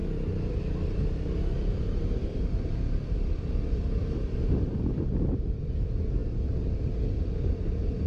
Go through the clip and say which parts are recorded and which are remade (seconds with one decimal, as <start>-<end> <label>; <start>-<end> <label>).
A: 0.0-1.7 recorded; 1.7-5.6 remade; 5.6-8.1 recorded